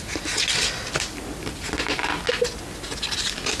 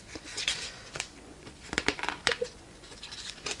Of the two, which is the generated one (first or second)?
second